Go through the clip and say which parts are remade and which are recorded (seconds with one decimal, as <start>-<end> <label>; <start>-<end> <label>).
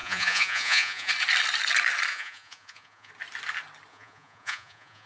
0.0-1.1 remade; 1.1-2.1 recorded; 2.1-3.1 remade; 3.1-3.9 recorded; 3.9-5.1 remade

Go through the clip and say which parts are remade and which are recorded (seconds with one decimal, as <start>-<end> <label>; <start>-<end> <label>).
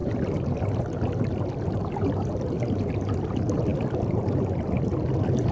0.0-5.5 recorded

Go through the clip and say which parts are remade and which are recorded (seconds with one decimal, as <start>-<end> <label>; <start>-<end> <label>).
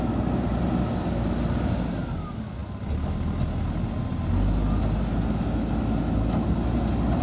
0.0-7.2 recorded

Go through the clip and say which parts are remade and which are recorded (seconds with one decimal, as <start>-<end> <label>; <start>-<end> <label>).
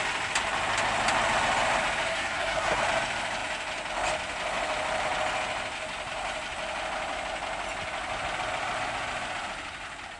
0.0-2.1 recorded; 2.1-2.8 remade; 2.8-10.2 recorded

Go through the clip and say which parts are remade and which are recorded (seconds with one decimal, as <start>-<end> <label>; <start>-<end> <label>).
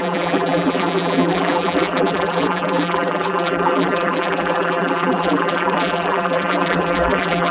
0.0-7.5 remade